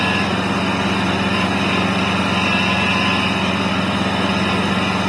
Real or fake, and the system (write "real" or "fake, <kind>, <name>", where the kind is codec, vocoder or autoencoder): real